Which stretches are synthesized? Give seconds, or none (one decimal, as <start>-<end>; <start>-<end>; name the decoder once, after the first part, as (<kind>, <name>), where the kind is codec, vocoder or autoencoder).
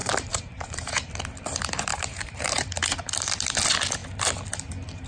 0.0-0.9 (vocoder, BigVGAN v2); 1.9-2.6